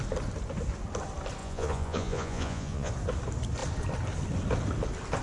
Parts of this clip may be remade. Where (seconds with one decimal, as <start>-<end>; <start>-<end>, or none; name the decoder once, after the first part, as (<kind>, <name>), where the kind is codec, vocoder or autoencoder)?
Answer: 1.4-2.9 (vocoder, Vocos)